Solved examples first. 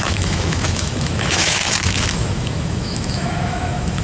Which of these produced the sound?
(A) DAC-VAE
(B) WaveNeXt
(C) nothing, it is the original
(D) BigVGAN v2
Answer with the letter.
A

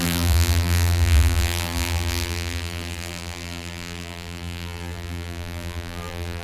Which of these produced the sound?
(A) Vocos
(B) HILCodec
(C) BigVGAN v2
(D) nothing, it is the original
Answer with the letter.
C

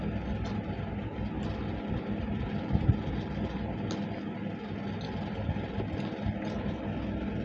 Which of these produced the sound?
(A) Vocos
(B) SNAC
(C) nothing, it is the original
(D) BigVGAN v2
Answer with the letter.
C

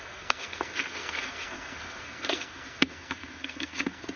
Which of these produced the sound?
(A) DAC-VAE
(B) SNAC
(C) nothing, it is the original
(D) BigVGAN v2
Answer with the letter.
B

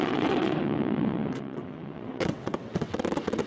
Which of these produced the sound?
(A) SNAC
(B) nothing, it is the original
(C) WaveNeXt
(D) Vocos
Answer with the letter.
C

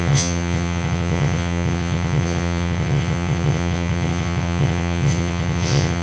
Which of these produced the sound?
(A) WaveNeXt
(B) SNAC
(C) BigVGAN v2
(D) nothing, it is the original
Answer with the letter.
A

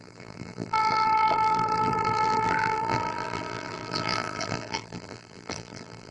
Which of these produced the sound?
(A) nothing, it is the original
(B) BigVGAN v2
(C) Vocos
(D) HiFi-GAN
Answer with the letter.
B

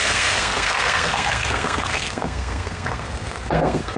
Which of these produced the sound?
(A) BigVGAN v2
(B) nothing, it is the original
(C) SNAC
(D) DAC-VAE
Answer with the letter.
C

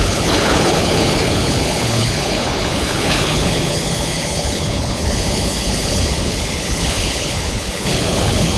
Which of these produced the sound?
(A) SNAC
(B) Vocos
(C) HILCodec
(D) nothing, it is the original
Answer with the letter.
C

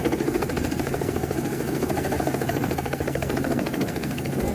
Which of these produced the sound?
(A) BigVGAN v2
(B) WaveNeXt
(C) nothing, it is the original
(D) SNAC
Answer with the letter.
D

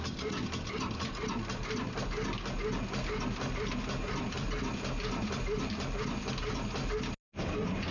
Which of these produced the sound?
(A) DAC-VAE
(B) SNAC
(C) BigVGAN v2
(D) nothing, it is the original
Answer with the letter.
D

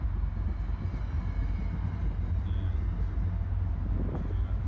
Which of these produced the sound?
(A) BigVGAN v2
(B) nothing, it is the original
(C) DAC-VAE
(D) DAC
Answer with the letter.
B